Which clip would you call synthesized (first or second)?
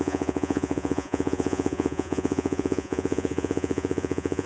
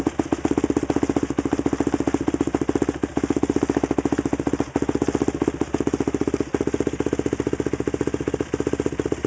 first